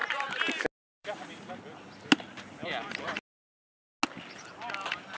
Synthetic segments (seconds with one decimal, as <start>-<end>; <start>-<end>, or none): 0.9-1.5